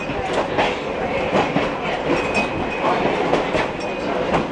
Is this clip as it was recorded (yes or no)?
yes